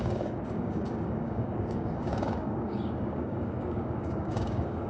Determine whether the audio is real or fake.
fake